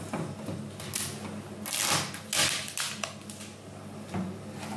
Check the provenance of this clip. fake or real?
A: real